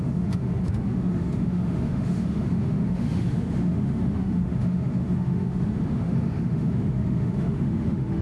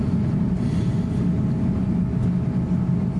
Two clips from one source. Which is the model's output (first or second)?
first